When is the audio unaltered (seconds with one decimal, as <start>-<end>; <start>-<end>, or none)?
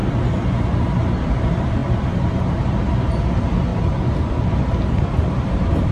0.0-1.3; 1.8-2.6; 3.7-4.5